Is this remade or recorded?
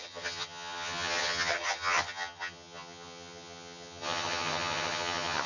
remade